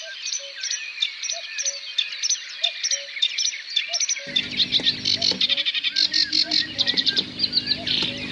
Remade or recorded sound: recorded